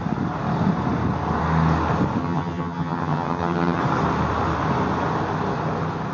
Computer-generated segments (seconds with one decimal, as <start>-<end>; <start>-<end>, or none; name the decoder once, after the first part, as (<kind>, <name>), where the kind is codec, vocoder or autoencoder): 2.2-3.8 (vocoder, HiFi-GAN)